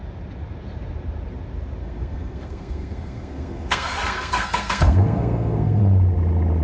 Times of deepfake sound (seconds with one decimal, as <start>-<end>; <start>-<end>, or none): 1.8-5.8